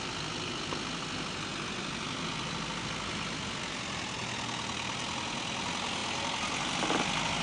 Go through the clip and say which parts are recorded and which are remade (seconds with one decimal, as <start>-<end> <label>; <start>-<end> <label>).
0.0-7.4 recorded